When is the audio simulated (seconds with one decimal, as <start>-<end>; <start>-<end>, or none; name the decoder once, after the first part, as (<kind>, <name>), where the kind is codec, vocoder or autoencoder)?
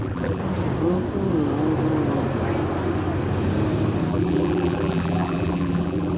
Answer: 0.0-0.4 (vocoder, BigVGAN v2); 4.1-6.2